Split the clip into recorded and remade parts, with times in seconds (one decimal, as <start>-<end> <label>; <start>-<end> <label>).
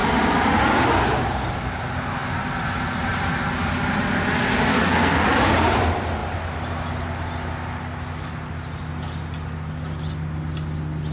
0.0-4.7 recorded; 4.7-5.2 remade; 5.2-11.1 recorded